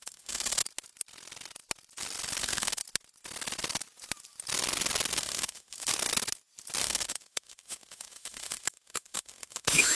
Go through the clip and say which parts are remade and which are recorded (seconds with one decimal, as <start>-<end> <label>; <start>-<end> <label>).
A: 0.0-0.6 remade; 0.6-2.4 recorded; 2.4-2.8 remade; 2.8-5.1 recorded; 5.1-5.9 remade; 5.9-6.8 recorded; 6.8-9.9 remade